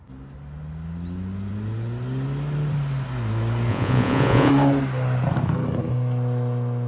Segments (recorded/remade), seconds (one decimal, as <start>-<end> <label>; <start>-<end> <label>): 0.0-3.7 recorded; 3.7-4.5 remade; 4.5-6.9 recorded